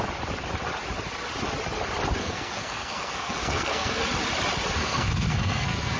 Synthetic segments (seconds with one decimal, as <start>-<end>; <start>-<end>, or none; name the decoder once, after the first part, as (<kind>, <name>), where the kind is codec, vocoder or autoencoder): 2.2-4.0 (codec, SNAC); 4.8-6.0